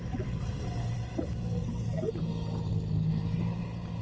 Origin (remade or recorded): recorded